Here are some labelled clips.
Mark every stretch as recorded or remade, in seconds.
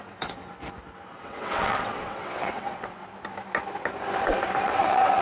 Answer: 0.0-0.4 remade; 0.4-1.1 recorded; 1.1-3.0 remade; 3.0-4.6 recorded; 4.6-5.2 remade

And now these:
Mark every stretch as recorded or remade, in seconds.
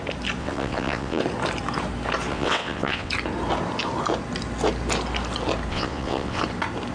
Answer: 0.0-0.4 recorded; 0.4-1.2 remade; 1.2-2.3 recorded; 2.3-3.1 remade; 3.1-5.7 recorded; 5.7-6.4 remade; 6.4-6.9 recorded